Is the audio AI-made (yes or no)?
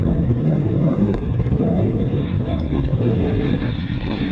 yes